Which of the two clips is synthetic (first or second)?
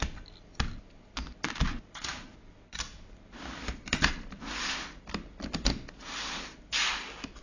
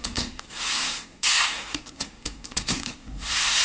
second